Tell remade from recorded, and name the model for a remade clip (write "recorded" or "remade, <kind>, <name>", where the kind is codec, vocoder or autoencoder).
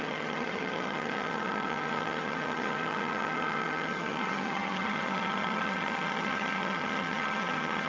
remade, vocoder, HiFi-GAN